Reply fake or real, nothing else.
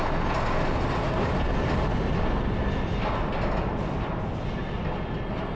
real